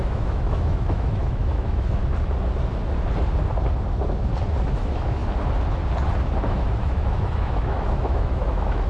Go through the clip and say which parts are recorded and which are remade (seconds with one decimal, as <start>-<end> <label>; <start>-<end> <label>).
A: 0.0-2.0 remade; 2.0-4.7 recorded; 4.7-5.2 remade; 5.2-6.5 recorded; 6.5-8.9 remade